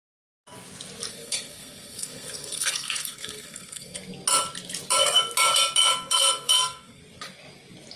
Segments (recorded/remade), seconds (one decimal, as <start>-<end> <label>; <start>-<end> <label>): 0.0-1.1 recorded; 1.1-4.0 remade; 4.0-5.9 recorded; 5.9-7.0 remade; 7.0-8.0 recorded